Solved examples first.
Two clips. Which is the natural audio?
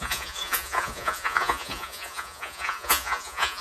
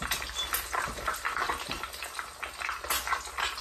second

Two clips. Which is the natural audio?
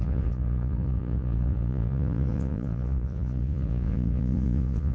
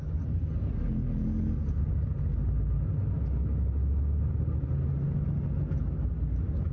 second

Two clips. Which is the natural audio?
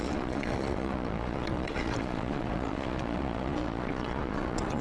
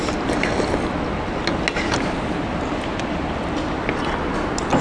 second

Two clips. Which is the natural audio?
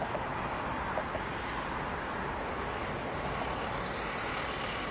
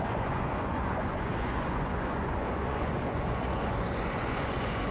first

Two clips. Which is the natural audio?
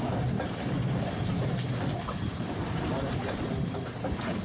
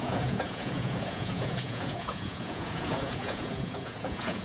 first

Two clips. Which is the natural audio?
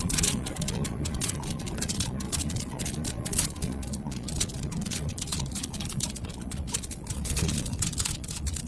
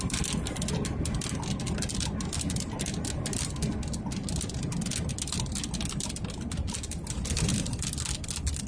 second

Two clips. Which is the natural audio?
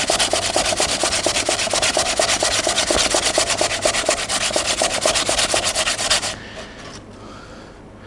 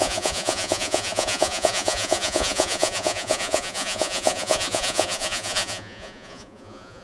first